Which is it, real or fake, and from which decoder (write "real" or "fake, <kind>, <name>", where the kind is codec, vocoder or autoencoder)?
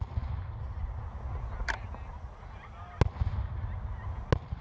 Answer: real